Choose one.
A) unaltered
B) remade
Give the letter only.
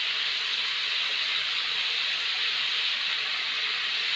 A